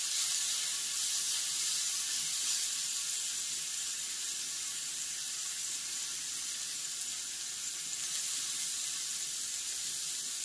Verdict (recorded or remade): recorded